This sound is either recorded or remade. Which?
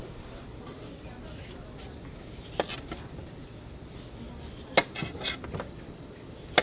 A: recorded